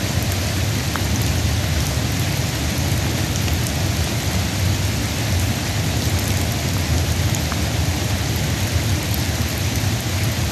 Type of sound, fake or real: real